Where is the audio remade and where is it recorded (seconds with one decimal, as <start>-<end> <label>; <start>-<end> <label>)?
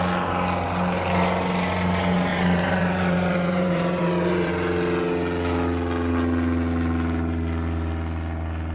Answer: 0.0-2.3 recorded; 2.3-4.5 remade; 4.5-8.7 recorded